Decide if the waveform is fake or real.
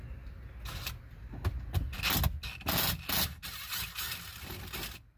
real